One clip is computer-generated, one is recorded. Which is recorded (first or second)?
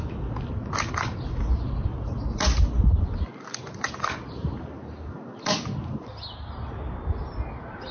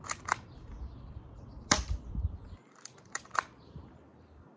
first